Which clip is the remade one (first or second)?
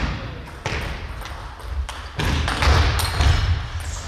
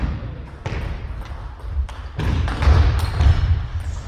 second